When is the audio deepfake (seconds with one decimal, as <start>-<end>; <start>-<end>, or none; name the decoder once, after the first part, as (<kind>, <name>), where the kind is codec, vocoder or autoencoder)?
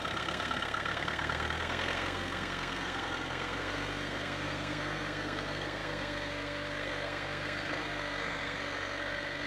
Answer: 0.0-9.5 (codec, SNAC)